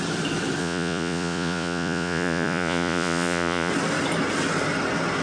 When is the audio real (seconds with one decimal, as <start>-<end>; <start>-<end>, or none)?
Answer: 0.0-0.6; 3.7-5.2